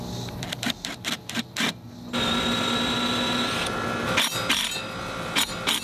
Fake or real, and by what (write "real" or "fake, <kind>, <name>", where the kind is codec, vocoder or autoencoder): real